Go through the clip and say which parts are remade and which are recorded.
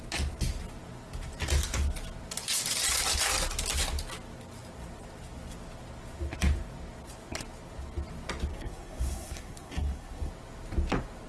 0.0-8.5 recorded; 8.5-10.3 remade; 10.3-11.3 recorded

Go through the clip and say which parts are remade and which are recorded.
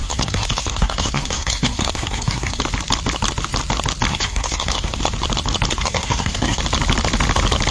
0.0-2.6 remade; 2.6-4.1 recorded; 4.1-5.0 remade; 5.0-5.7 recorded; 5.7-6.6 remade; 6.6-7.7 recorded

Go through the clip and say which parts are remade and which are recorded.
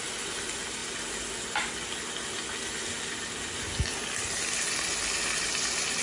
0.0-6.0 recorded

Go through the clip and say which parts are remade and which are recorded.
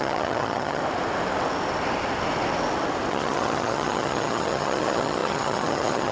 0.0-0.8 remade; 0.8-3.1 recorded; 3.1-6.1 remade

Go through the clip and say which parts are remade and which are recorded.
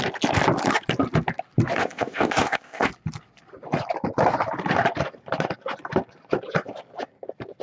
0.0-1.8 recorded; 1.8-2.9 remade; 2.9-7.6 recorded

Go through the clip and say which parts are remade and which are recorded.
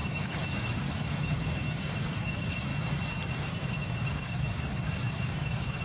0.0-2.7 remade; 2.7-3.3 recorded; 3.3-5.8 remade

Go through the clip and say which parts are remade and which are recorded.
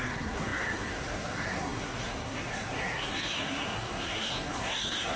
0.0-5.2 remade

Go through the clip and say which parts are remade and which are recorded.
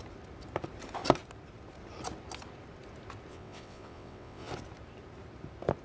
0.0-3.3 recorded; 3.3-4.5 remade; 4.5-5.8 recorded